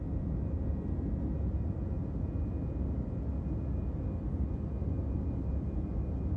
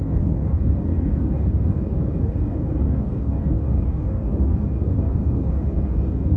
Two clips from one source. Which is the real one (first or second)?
first